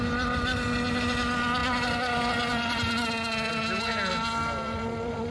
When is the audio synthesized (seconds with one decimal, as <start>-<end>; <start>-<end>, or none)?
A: 4.1-5.3